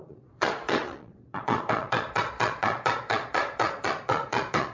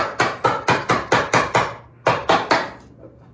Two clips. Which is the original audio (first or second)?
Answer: second